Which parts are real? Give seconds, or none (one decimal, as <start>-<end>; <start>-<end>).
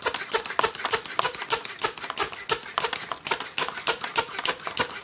0.0-5.0